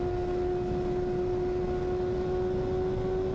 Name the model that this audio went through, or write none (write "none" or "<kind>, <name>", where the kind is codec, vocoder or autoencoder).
none